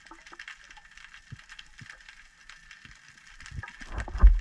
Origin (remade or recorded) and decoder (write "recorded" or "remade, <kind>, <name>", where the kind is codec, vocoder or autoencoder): recorded